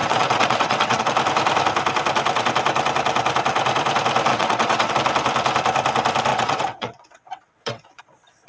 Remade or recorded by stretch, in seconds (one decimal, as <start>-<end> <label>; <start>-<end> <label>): 0.0-1.0 remade; 1.0-4.3 recorded; 4.3-4.9 remade; 4.9-6.3 recorded; 6.3-8.0 remade; 8.0-8.5 recorded